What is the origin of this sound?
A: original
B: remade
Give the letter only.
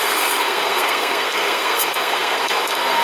B